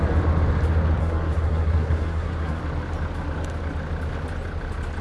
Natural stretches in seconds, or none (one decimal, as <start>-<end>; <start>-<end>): 0.0-1.0; 2.6-5.0